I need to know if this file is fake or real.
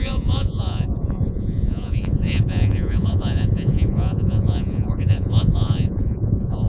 fake